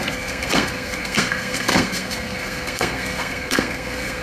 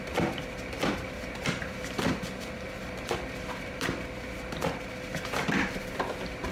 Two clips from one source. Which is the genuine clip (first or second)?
second